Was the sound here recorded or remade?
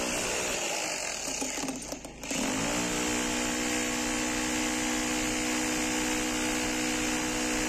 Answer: recorded